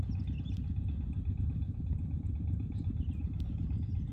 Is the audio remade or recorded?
recorded